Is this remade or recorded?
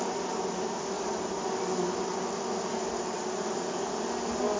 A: recorded